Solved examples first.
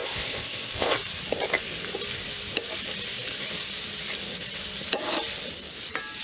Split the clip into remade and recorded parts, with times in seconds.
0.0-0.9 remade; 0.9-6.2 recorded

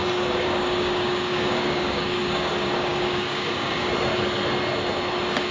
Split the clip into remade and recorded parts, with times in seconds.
0.0-3.9 remade; 3.9-5.5 recorded

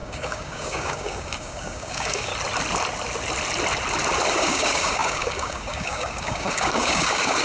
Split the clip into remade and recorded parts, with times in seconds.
0.0-2.3 remade; 2.3-4.3 recorded; 4.3-7.4 remade

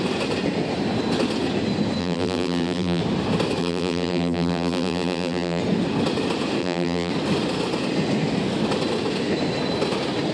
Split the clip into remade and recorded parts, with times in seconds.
0.0-2.0 recorded; 2.0-3.0 remade; 3.0-3.6 recorded; 3.6-5.6 remade; 5.6-6.6 recorded; 6.6-7.1 remade; 7.1-10.3 recorded

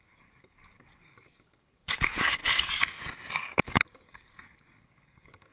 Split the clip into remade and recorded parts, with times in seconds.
0.0-2.4 remade; 2.4-3.3 recorded; 3.3-5.5 remade

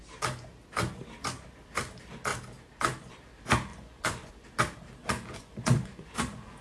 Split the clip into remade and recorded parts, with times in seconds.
0.0-3.7 recorded; 3.7-4.3 remade; 4.3-5.0 recorded; 5.0-6.6 remade